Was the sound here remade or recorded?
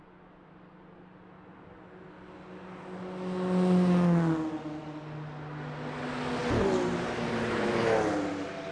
recorded